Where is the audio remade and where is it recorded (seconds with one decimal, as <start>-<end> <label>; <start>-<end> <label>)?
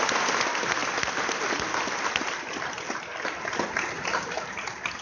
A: 0.0-5.0 recorded